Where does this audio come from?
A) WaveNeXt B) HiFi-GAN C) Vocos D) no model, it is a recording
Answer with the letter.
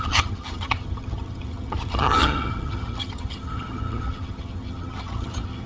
B